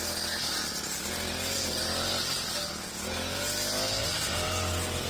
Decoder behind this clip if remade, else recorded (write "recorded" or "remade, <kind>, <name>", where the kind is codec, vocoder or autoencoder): recorded